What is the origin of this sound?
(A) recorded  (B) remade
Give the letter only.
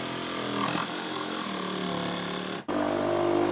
A